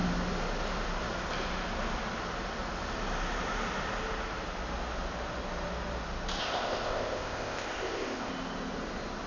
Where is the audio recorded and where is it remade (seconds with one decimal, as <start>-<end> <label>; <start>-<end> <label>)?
0.0-6.4 recorded; 6.4-8.3 remade; 8.3-9.3 recorded